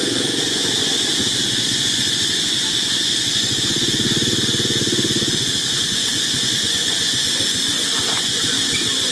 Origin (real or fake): fake